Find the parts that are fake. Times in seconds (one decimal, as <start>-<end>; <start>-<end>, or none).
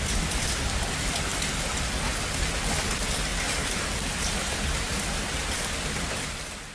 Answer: none